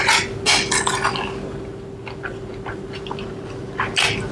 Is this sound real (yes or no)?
yes